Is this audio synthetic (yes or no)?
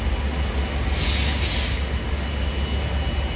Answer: no